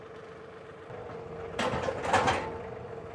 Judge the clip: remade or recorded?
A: recorded